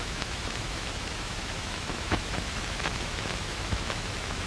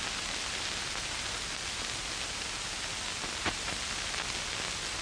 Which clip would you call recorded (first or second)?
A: second